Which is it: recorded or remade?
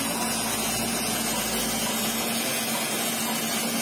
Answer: recorded